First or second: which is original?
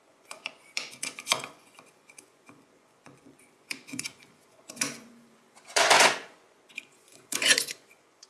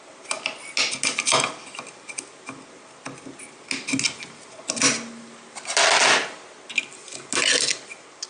second